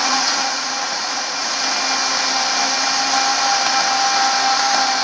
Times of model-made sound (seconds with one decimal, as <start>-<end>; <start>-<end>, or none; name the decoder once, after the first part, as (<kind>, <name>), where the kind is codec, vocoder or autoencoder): 0.0-1.5 (vocoder, Vocos)